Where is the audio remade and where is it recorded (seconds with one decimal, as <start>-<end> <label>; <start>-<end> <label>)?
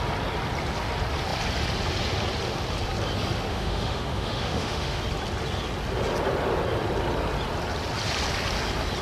0.0-3.5 recorded; 3.5-5.0 remade; 5.0-9.0 recorded